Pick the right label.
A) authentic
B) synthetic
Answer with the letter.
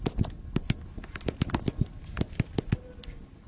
A